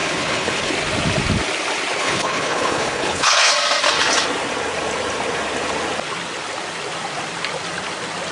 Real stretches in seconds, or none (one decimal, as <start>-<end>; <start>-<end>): 0.7-2.0; 3.5-8.3